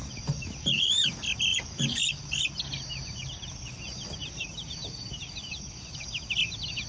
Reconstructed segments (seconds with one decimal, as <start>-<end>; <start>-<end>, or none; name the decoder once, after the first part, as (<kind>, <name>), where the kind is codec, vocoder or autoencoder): 0.0-1.1 (vocoder, BigVGAN v2); 1.5-2.0